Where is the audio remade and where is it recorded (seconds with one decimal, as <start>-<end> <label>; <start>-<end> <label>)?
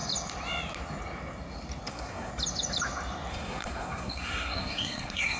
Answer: 0.0-1.9 recorded; 1.9-2.3 remade; 2.3-3.3 recorded; 3.3-5.4 remade